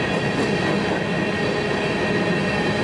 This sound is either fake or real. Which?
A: real